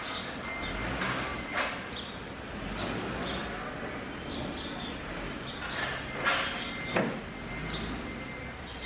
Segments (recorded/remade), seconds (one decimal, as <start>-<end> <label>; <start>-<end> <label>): 0.0-1.3 recorded; 1.3-1.8 remade; 1.8-8.9 recorded